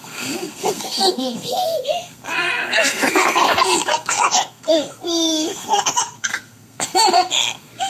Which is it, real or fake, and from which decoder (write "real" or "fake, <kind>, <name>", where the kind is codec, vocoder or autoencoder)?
fake, codec, SNAC